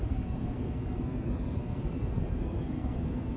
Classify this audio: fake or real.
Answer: fake